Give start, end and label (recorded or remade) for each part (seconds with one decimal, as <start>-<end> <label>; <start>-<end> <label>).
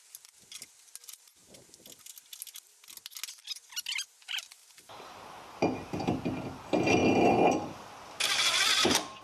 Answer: 0.0-4.6 recorded; 4.6-6.0 remade; 6.0-9.2 recorded